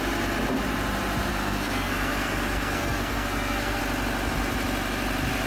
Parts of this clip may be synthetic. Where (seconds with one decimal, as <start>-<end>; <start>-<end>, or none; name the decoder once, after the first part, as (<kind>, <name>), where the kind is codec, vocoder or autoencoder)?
1.3-3.8 (codec, SNAC)